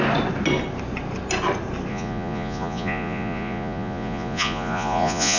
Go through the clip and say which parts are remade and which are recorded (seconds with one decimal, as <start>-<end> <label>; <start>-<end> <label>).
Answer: 0.0-1.9 recorded; 1.9-5.4 remade